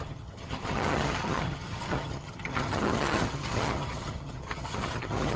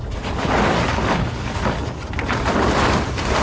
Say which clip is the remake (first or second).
first